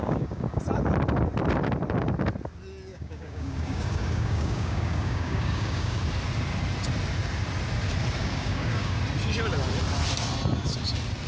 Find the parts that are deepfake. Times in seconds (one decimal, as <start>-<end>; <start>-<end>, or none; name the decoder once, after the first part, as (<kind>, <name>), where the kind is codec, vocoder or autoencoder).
0.0-0.6 (codec, DAC); 2.9-6.0; 8.2-9.0